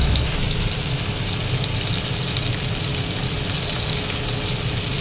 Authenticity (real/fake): real